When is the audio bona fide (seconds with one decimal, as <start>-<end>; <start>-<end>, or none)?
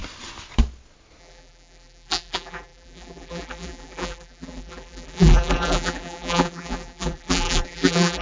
0.0-1.2